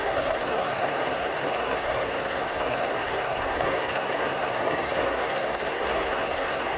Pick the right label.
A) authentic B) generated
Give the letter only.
B